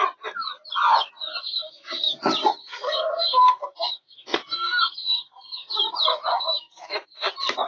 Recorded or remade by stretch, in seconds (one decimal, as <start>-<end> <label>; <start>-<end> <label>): 0.0-1.4 recorded; 1.4-2.2 remade; 2.2-2.6 recorded; 2.6-5.7 remade; 5.7-6.3 recorded; 6.3-7.3 remade; 7.3-7.7 recorded